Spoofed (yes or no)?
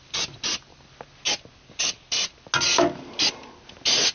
no